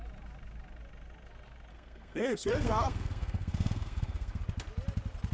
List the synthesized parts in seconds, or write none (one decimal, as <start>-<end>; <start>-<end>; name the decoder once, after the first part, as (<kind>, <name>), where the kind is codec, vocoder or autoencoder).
1.7-4.4 (codec, SNAC)